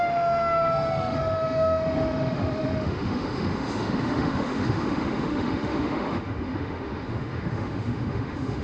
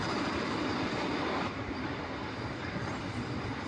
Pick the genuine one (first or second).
second